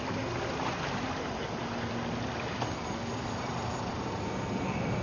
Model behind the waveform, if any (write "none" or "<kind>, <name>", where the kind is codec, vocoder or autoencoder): none